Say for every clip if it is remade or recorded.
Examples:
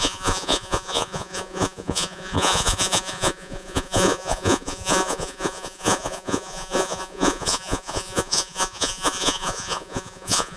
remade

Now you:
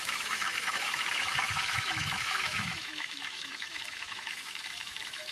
remade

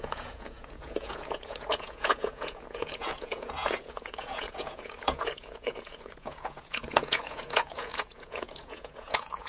remade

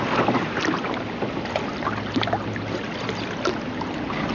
recorded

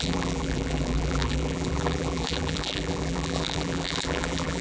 remade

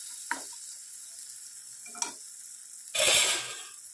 recorded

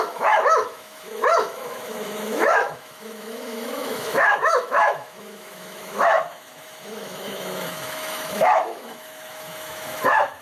remade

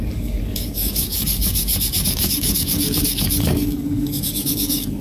remade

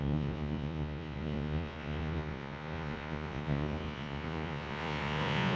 remade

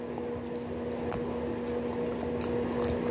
recorded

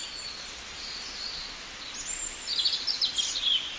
recorded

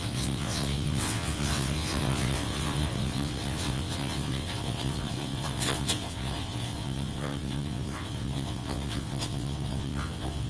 remade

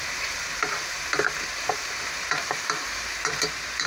remade